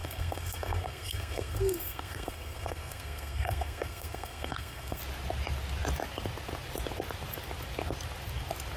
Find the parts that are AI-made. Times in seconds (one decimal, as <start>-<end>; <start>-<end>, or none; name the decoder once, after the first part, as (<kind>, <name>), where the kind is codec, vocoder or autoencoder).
0.0-5.0 (codec, SNAC)